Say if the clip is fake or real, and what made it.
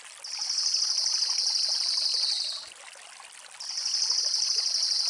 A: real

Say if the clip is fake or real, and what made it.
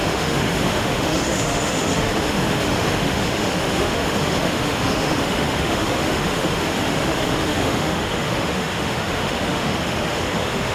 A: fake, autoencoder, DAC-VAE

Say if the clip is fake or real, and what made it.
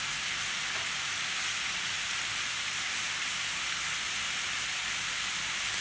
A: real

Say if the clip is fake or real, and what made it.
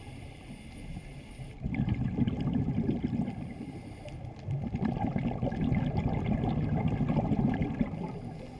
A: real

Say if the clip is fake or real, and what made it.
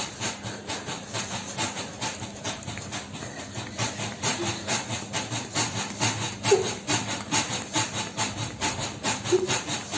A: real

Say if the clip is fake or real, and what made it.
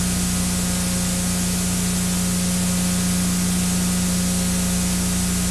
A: real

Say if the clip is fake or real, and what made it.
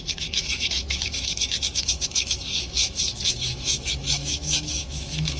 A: fake, autoencoder, DAC-VAE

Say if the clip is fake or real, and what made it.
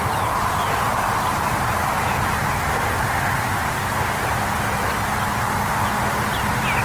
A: real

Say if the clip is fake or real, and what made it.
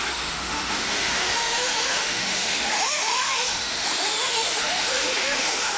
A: fake, autoencoder, DAC-VAE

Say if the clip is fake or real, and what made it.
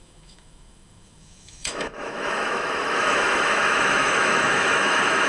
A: fake, autoencoder, DAC-VAE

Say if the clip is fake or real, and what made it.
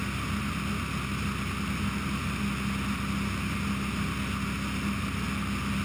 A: real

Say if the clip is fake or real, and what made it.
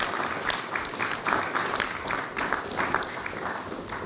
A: real